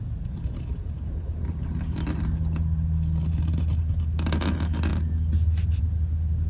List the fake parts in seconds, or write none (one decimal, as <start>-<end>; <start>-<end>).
none